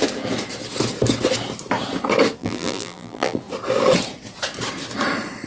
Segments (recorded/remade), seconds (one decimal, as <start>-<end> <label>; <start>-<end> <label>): 0.0-2.4 recorded; 2.4-3.4 remade; 3.4-5.5 recorded